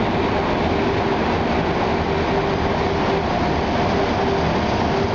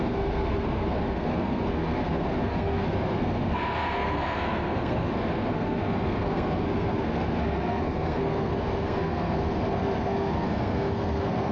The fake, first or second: second